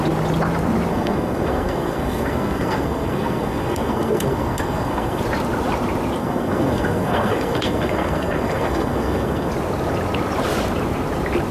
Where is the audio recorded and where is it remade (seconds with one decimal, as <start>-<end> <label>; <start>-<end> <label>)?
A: 0.0-0.9 recorded; 0.9-5.2 remade; 5.2-6.2 recorded; 6.2-9.5 remade; 9.5-11.5 recorded